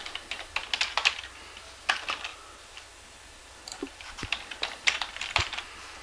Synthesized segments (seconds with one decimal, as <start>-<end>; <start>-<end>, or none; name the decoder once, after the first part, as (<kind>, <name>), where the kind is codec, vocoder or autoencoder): 2.3-5.4 (vocoder, BigVGAN v2)